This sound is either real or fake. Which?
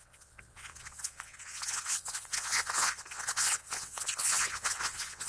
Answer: fake